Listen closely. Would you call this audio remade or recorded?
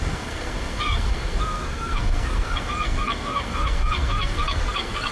remade